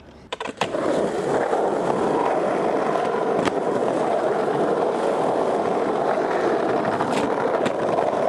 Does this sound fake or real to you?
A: real